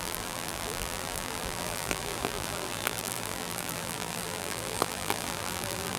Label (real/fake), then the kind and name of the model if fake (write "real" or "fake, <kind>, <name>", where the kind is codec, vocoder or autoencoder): fake, vocoder, BigVGAN v2